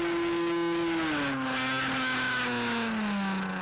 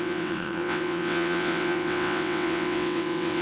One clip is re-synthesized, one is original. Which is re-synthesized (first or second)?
second